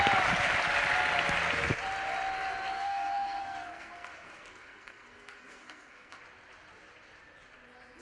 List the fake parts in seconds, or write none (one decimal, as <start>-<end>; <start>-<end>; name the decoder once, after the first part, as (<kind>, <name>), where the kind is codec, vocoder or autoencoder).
2.7-6.2 (codec, SNAC)